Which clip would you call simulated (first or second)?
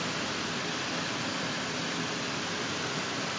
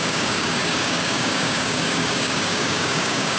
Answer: second